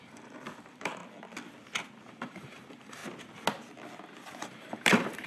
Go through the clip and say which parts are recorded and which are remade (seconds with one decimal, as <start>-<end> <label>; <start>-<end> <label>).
0.0-1.0 remade; 1.0-2.1 recorded; 2.1-3.0 remade; 3.0-4.4 recorded; 4.4-5.3 remade